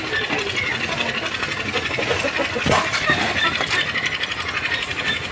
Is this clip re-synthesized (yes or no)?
no